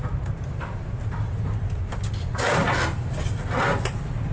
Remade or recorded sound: recorded